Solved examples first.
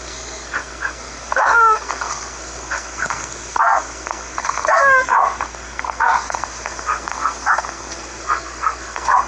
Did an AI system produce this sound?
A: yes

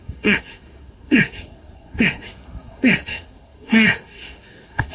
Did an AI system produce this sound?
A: yes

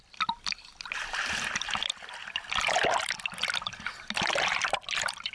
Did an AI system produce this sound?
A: no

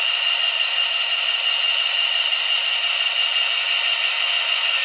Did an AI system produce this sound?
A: no